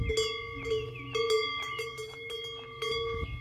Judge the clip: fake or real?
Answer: real